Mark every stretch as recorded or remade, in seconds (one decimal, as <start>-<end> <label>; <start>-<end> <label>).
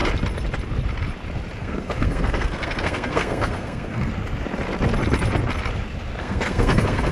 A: 0.0-1.6 recorded; 1.6-4.1 remade; 4.1-6.2 recorded; 6.2-7.1 remade